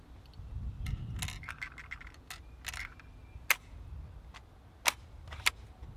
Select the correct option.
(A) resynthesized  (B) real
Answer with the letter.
B